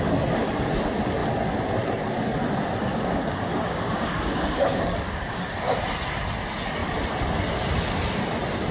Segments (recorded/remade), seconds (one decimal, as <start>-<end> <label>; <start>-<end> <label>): 0.0-2.9 recorded; 2.9-5.4 remade; 5.4-8.7 recorded